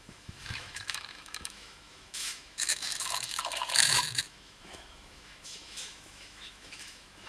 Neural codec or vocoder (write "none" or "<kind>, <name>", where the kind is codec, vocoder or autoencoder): autoencoder, DAC-VAE